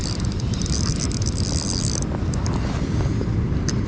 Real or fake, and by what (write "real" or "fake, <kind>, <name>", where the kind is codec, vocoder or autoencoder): real